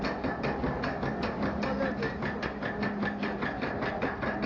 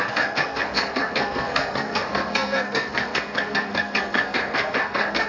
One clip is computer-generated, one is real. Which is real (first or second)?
first